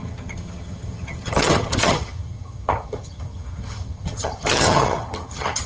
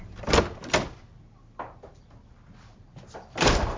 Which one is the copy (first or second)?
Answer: first